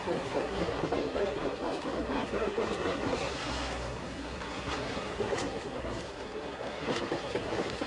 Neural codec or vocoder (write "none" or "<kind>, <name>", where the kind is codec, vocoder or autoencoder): codec, SNAC